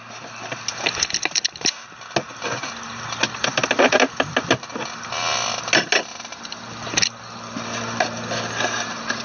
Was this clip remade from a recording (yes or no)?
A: no